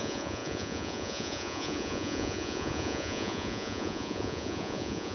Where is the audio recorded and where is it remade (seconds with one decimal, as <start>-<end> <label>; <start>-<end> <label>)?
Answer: 0.0-5.1 remade